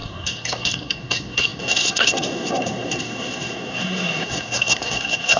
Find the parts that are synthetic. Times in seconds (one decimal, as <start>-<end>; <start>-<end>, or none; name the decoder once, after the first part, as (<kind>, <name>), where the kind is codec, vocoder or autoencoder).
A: 0.0-5.4 (codec, SNAC)